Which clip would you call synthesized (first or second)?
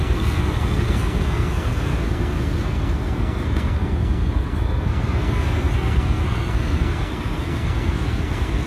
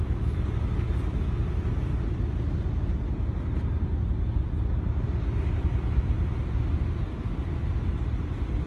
first